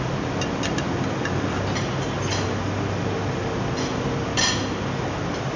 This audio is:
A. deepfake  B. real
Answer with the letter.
B